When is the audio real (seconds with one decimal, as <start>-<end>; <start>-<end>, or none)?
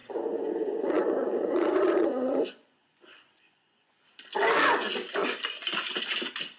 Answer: 4.0-5.2; 5.8-6.6